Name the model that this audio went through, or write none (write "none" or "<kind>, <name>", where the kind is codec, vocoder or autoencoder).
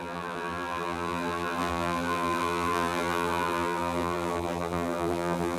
vocoder, BigVGAN v2